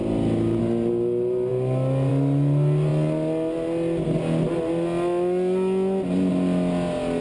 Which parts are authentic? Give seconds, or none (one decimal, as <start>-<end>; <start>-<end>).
0.0-7.2